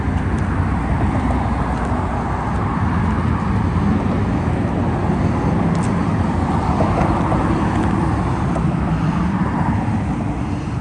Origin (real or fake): real